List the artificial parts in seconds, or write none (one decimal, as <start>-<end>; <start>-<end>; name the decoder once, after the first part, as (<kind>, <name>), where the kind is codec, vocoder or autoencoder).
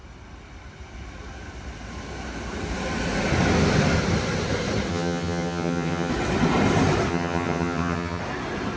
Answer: 4.9-6.1 (vocoder, HiFi-GAN); 7.1-8.2